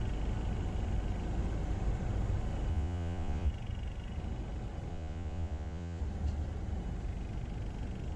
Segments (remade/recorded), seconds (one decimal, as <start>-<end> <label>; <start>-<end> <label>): 0.0-2.7 recorded; 2.7-3.5 remade; 3.5-4.9 recorded; 4.9-6.0 remade; 6.0-8.2 recorded